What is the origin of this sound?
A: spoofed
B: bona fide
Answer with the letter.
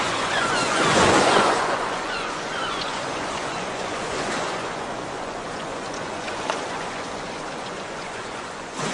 A